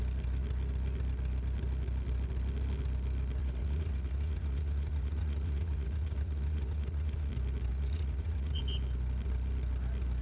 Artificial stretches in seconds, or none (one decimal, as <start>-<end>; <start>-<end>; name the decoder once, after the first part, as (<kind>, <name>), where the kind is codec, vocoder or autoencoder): 3.4-7.3 (vocoder, Vocos); 7.7-8.6